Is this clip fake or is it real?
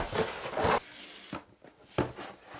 real